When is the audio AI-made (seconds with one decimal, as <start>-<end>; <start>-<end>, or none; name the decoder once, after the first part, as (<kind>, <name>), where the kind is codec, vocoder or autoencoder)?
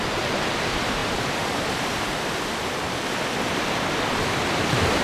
none